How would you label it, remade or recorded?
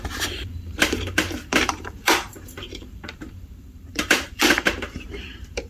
remade